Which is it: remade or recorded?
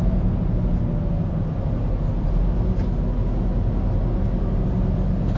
recorded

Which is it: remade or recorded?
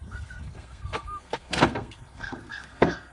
remade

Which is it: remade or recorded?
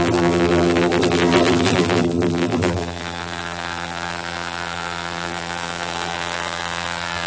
remade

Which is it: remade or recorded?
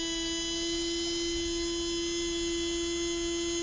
recorded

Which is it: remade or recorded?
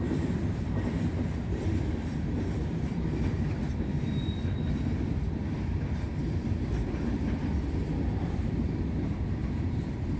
remade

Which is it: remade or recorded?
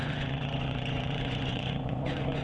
remade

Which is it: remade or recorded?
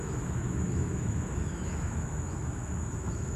remade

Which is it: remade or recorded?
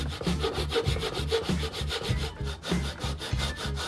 remade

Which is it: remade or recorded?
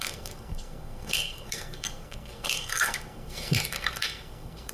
remade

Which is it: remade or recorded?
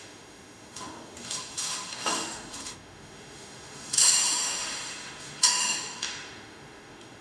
remade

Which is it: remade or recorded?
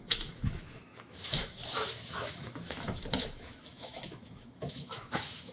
remade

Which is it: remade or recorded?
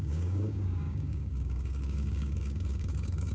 remade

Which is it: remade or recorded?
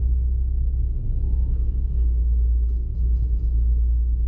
recorded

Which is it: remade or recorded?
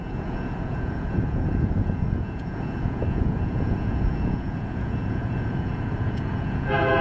remade